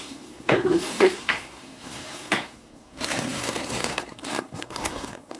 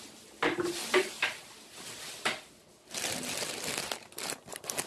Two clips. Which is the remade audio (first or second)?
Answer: first